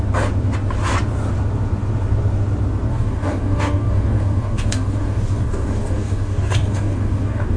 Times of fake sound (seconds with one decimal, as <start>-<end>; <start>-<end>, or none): 2.9-7.6